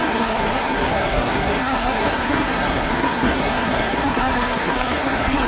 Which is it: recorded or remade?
remade